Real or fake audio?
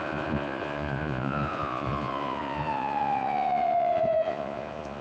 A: fake